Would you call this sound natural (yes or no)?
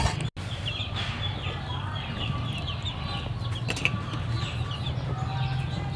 yes